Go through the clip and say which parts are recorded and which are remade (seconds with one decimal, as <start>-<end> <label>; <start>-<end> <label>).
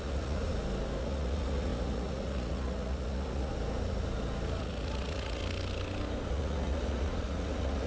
0.0-0.4 remade; 0.4-1.0 recorded; 1.0-3.5 remade; 3.5-4.6 recorded; 4.6-5.4 remade; 5.4-6.3 recorded; 6.3-7.9 remade